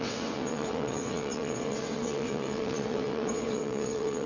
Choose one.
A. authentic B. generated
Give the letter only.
B